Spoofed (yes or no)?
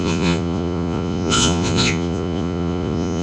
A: yes